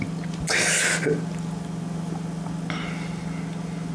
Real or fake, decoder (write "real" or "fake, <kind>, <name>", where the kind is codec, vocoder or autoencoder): real